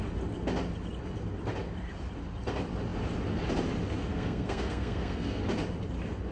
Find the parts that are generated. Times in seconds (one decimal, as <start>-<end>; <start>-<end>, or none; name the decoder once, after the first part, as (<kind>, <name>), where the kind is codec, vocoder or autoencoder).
4.1-5.4 (codec, SNAC)